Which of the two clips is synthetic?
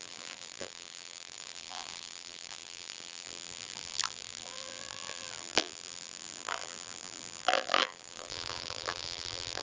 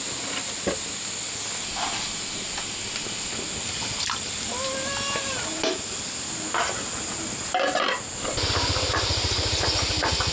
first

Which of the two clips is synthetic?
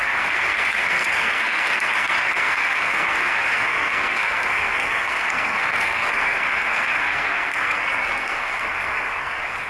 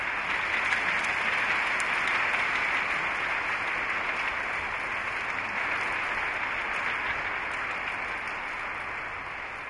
first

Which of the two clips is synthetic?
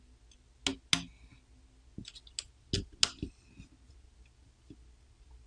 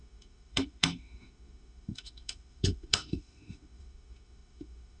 second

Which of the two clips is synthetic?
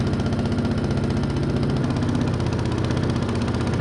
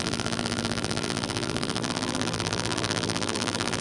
second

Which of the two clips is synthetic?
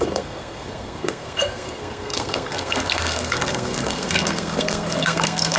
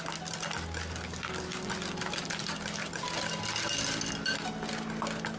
first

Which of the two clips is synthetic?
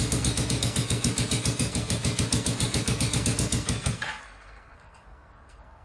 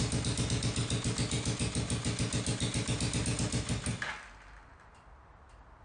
first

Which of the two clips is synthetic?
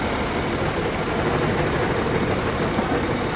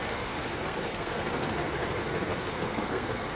second